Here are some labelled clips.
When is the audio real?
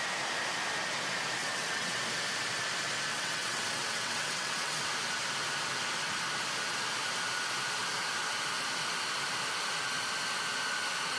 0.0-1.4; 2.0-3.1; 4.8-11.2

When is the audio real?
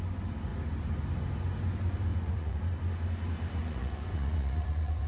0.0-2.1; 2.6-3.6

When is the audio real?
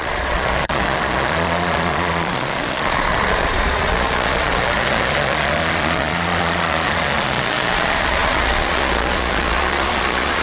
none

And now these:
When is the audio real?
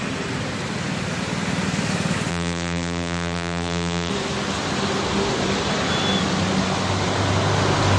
0.0-2.3; 4.1-8.0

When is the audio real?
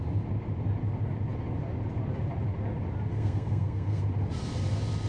0.0-3.1; 4.0-5.1